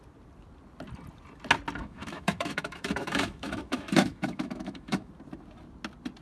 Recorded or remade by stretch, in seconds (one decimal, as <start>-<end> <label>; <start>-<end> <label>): 0.0-1.8 recorded; 1.8-5.1 remade; 5.1-6.2 recorded